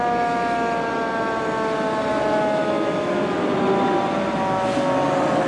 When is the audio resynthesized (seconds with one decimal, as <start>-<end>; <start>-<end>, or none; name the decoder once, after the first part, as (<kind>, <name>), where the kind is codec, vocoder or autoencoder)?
2.1-3.4 (autoencoder, DAC-VAE)

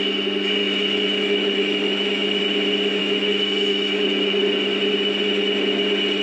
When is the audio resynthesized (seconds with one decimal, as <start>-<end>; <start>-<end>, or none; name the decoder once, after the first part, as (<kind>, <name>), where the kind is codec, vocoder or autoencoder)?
0.6-2.4 (autoencoder, DAC-VAE); 3.0-4.4